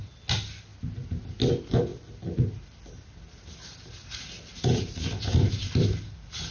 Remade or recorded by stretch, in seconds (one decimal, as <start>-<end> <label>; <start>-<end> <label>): 0.0-6.5 recorded